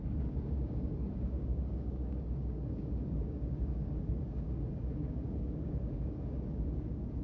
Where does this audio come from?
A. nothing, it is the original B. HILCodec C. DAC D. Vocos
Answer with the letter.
C